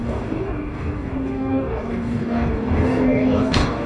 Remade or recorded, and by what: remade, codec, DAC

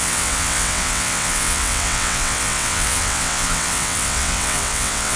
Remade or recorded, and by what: remade, vocoder, WaveNeXt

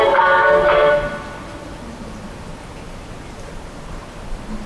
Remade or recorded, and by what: recorded